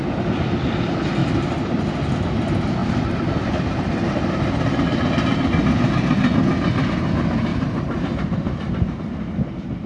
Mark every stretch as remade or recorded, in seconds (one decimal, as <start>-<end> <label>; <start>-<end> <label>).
0.0-1.2 recorded; 1.2-1.8 remade; 1.8-2.8 recorded; 2.8-4.3 remade; 4.3-7.5 recorded; 7.5-9.0 remade; 9.0-9.9 recorded